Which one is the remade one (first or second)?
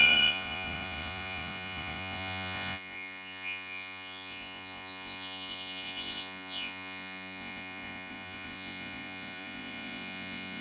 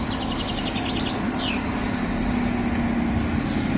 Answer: first